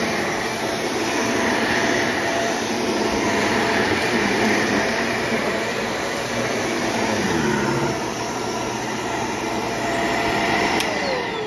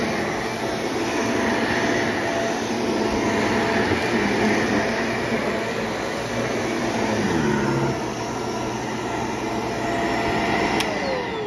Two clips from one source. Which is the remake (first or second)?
first